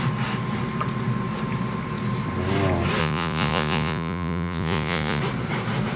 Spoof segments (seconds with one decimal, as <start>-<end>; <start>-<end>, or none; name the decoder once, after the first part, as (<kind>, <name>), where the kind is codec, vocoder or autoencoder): 3.0-5.2 (vocoder, Vocos)

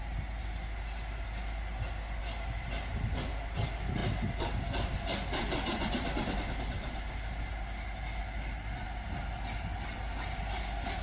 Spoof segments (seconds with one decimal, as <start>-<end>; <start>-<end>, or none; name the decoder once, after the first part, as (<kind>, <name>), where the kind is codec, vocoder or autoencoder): none

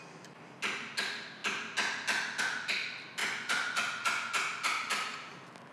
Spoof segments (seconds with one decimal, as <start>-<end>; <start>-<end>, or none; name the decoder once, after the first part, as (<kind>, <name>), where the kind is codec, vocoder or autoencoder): 3.2-4.3 (vocoder, Vocos)

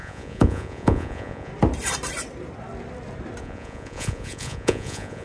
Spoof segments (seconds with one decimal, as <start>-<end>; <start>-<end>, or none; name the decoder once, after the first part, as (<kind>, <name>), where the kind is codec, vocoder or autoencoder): 0.0-1.5 (vocoder, Vocos); 3.4-5.2

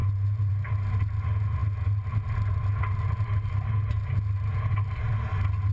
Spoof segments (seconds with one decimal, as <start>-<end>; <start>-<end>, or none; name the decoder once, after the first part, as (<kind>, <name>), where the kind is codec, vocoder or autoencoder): none

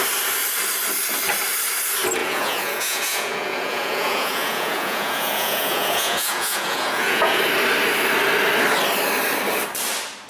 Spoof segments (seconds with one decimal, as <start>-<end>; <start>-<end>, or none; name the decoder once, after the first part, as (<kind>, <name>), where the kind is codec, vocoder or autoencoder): 2.2-7.4 (vocoder, Vocos)

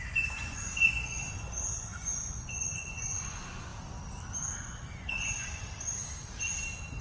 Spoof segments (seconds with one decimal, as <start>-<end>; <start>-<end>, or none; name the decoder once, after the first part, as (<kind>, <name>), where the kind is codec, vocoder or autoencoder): 0.0-3.7 (vocoder, Vocos); 4.5-5.6

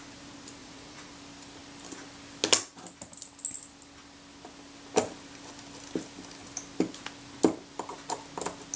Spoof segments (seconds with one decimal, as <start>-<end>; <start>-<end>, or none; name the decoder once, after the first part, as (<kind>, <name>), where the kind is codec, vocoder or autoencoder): 0.6-1.1 (vocoder, Vocos)